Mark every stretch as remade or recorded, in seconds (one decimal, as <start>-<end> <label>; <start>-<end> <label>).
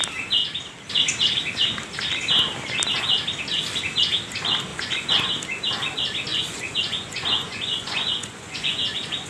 0.0-4.7 recorded; 4.7-5.3 remade; 5.3-6.3 recorded; 6.3-9.3 remade